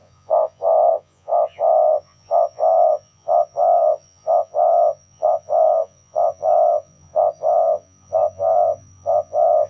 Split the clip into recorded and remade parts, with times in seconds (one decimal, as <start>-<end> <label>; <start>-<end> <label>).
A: 0.0-9.7 remade